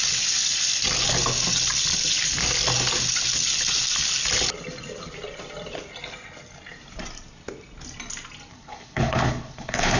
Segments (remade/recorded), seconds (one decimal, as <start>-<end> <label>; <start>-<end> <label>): 0.0-8.5 recorded; 8.5-10.0 remade